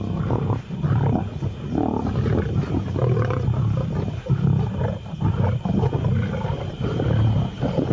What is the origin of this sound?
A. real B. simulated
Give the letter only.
A